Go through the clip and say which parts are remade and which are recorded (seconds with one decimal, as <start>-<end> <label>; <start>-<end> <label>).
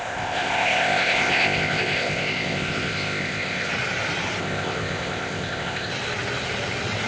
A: 0.0-3.7 remade; 3.7-4.4 recorded; 4.4-5.9 remade; 5.9-7.1 recorded